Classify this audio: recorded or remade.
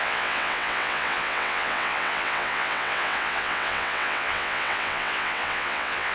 remade